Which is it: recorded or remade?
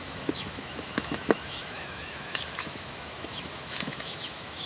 remade